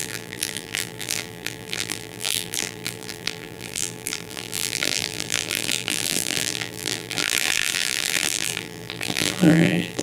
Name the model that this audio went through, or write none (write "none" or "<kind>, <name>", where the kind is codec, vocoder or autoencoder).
vocoder, BigVGAN v2